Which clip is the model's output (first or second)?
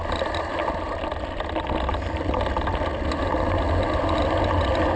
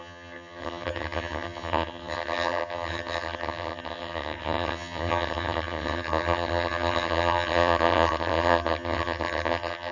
second